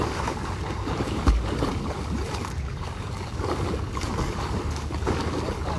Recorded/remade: remade